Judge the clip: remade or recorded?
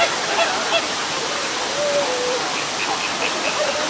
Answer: recorded